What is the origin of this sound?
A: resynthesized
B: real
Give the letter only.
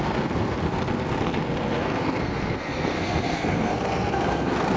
A